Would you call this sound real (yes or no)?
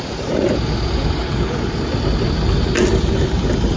yes